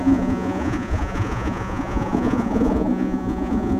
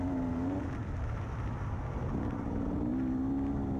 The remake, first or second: first